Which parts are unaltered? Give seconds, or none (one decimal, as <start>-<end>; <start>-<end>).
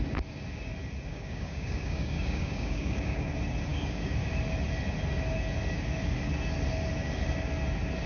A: 0.0-1.1; 3.3-3.7; 4.3-8.1